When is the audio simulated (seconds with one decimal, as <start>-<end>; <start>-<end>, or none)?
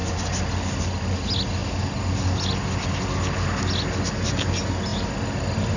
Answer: none